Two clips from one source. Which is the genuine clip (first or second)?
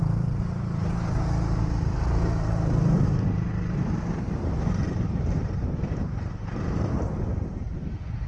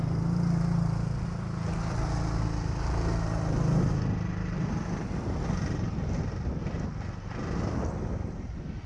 second